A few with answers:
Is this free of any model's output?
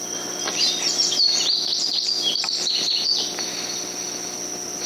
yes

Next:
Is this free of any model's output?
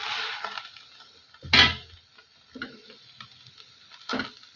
yes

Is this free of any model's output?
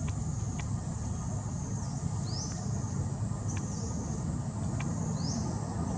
yes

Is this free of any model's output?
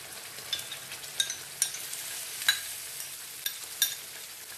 yes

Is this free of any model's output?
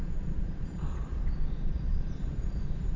no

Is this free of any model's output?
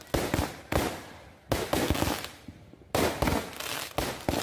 yes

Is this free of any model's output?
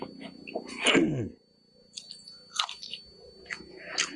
yes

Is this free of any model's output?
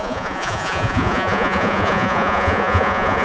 no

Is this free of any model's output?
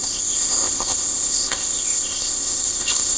no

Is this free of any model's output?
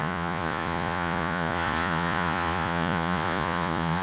no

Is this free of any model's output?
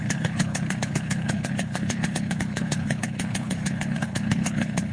no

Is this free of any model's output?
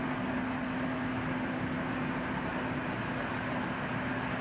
yes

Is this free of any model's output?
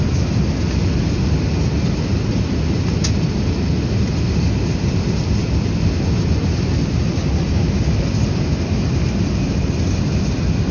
yes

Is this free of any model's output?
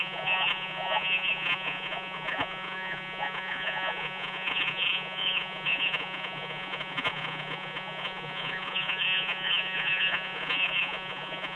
no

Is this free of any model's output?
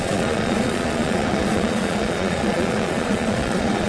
no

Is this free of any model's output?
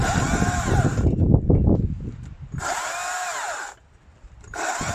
yes